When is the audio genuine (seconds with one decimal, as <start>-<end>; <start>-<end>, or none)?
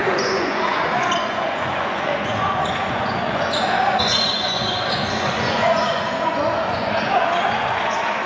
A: none